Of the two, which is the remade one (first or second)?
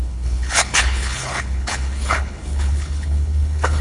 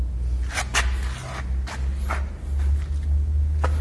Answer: first